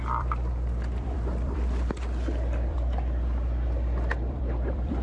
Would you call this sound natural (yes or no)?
no